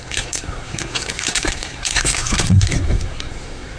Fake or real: fake